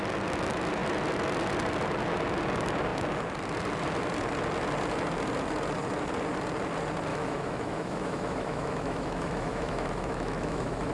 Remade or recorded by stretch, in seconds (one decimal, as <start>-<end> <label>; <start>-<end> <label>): 0.0-7.1 recorded; 7.1-10.9 remade